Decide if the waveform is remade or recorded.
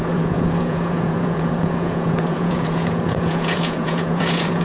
remade